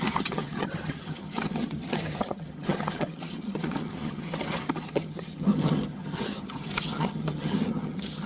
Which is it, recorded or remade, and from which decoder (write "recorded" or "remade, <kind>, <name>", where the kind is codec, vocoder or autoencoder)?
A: remade, vocoder, HiFi-GAN